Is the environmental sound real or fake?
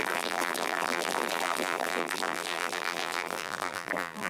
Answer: fake